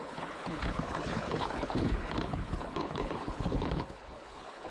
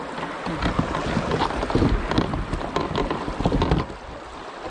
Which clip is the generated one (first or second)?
first